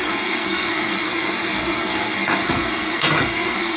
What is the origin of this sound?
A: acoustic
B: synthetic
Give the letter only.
B